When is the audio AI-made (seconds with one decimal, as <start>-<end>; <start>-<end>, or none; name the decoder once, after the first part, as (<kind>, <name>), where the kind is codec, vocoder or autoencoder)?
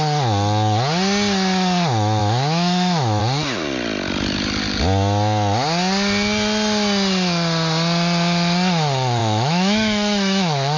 2.2-3.2 (autoencoder, DAC-VAE); 9.2-10.8